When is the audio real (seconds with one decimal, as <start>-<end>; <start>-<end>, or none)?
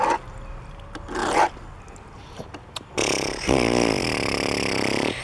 0.0-5.2